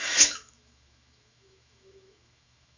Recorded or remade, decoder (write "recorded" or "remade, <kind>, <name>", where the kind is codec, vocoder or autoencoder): remade, autoencoder, DAC-VAE